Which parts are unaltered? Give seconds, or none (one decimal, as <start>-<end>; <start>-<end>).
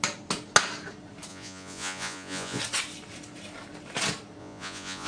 0.0-1.3; 2.6-4.4